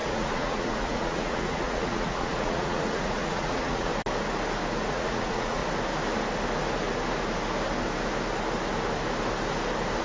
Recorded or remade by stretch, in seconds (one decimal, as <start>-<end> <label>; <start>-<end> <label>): 0.0-3.9 remade; 3.9-4.9 recorded; 4.9-5.6 remade; 5.6-10.0 recorded